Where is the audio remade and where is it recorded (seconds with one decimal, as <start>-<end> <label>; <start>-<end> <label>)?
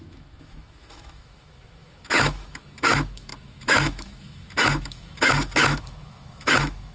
0.0-6.9 remade